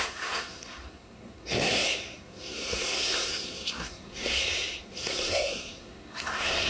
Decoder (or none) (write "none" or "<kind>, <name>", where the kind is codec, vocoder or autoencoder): codec, SNAC